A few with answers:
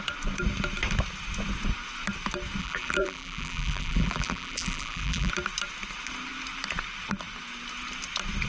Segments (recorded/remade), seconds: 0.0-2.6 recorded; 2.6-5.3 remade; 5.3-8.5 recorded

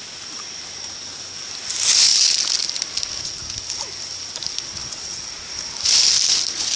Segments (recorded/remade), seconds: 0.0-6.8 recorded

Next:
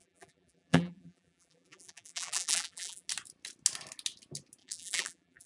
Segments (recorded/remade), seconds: 0.0-3.1 remade; 3.1-4.6 recorded; 4.6-5.5 remade

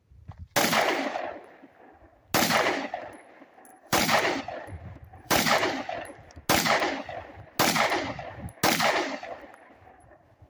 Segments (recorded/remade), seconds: 0.0-3.7 recorded; 3.7-4.4 remade; 4.4-5.1 recorded; 5.1-5.8 remade; 5.8-10.5 recorded